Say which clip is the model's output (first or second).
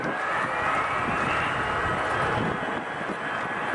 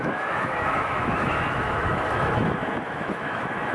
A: second